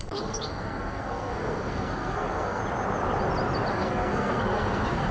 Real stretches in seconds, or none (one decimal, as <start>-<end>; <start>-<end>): 2.6-3.7